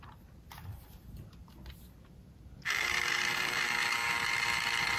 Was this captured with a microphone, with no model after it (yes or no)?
yes